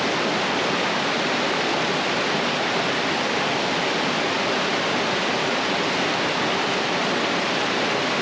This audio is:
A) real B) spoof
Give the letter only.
A